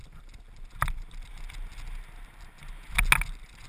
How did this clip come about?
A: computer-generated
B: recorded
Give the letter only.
B